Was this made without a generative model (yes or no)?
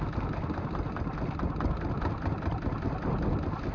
yes